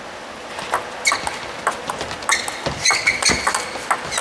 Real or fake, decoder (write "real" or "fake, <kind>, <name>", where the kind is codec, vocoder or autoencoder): real